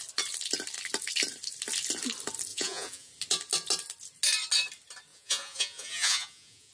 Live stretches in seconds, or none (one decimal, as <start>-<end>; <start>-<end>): 0.0-2.5; 3.1-5.1